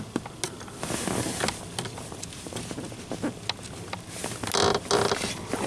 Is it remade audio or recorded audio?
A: recorded